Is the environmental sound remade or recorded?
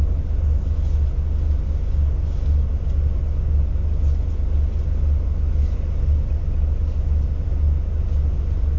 recorded